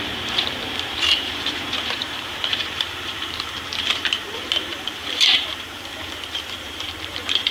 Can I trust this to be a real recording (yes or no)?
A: no